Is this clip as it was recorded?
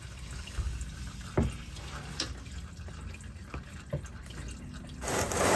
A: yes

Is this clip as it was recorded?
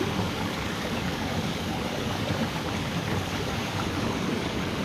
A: no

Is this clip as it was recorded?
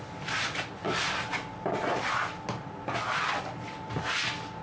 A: yes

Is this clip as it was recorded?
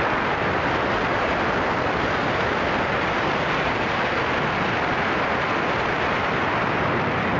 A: yes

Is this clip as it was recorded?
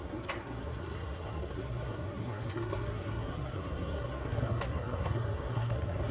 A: no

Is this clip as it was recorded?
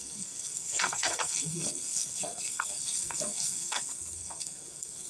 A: no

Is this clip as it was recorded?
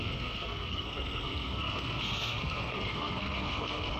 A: no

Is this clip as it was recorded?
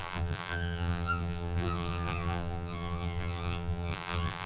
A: no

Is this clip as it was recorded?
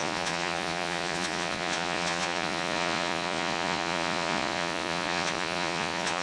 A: no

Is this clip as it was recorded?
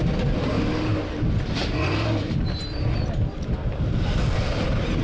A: yes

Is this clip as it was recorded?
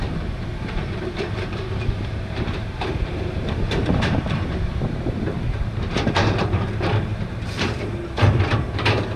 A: no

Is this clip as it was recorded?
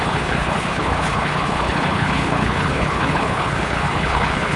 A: no